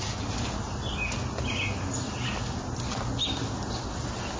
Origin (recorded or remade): recorded